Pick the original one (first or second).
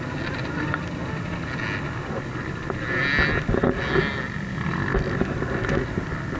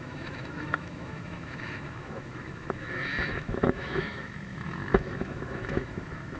first